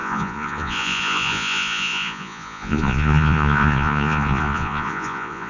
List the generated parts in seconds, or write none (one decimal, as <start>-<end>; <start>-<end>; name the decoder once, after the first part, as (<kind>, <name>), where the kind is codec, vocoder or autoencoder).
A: 0.0-5.5 (vocoder, Vocos)